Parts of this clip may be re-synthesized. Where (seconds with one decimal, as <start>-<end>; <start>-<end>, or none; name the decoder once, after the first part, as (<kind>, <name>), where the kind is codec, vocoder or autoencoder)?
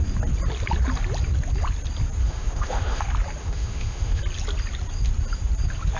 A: 2.2-3.0 (autoencoder, DAC-VAE); 3.4-4.2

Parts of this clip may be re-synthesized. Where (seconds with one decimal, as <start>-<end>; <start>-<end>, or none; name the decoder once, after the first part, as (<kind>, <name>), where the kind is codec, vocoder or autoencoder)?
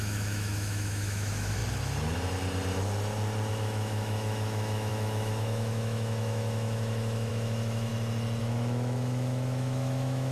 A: 0.0-1.6 (autoencoder, DAC-VAE); 3.5-7.9; 8.4-10.3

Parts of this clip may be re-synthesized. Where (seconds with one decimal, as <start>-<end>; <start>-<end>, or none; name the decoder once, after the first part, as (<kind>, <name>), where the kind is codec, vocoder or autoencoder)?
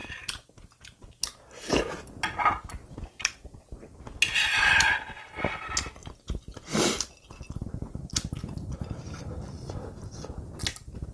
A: none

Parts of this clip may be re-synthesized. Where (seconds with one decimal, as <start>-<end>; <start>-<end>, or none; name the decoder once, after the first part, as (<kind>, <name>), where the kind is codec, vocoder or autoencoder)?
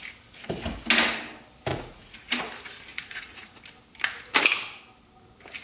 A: 1.7-2.4 (vocoder, Vocos); 2.9-3.6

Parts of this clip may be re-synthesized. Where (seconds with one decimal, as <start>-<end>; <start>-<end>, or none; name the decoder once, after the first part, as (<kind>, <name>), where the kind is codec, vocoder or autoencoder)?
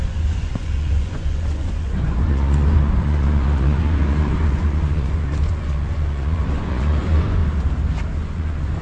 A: 0.0-7.4 (vocoder, Vocos); 8.2-8.8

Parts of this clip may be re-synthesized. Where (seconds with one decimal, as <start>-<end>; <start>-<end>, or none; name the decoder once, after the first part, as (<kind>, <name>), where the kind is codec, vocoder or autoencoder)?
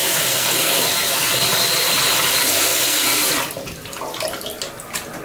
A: 0.0-1.3 (codec, SNAC); 2.4-3.2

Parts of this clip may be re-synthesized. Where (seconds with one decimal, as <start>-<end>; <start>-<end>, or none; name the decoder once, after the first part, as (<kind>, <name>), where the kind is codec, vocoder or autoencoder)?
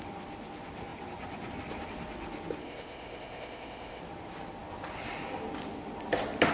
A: 2.6-4.0 (codec, ZipCodec)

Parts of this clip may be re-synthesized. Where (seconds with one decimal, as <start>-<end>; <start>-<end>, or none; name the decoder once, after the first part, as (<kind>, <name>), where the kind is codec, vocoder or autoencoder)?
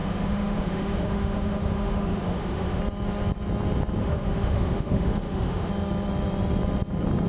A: 0.0-2.8 (autoencoder, DAC-VAE); 4.0-5.7